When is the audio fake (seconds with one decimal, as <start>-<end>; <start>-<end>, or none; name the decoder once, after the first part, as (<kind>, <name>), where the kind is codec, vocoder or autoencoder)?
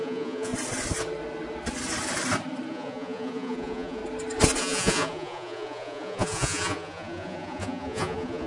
0.0-0.5 (vocoder, Vocos); 2.7-4.0; 4.6-8.5